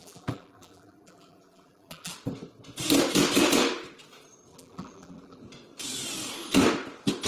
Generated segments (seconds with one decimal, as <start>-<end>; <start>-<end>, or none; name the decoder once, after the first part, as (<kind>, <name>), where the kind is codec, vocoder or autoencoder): 0.0-2.1 (vocoder, BigVGAN v2); 4.5-5.4